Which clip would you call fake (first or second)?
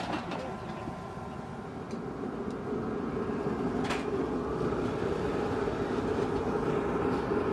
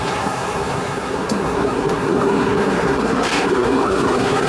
second